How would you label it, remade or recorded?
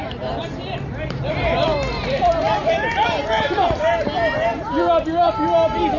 remade